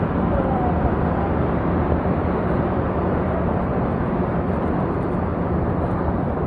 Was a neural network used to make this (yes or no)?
yes